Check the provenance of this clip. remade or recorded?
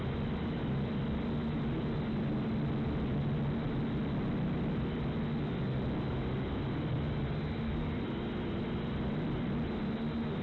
recorded